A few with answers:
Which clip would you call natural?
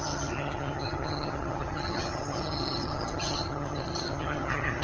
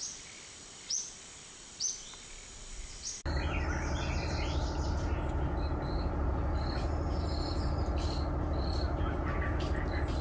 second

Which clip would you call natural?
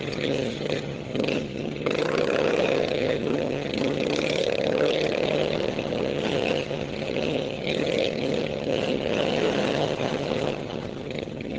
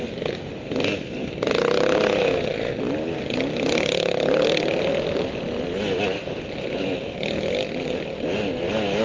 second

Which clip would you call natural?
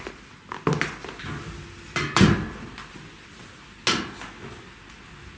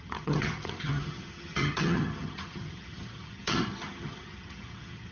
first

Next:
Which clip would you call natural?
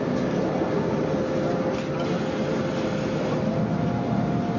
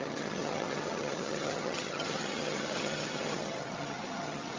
first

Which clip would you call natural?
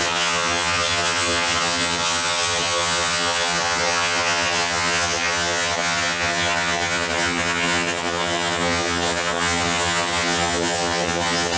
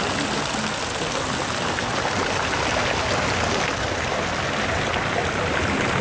second